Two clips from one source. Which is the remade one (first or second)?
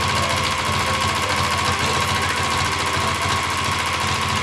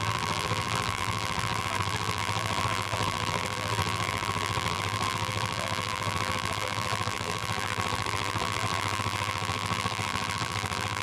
second